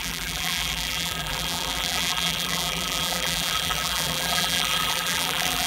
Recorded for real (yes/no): no